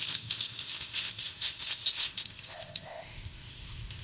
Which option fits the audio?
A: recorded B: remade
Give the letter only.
B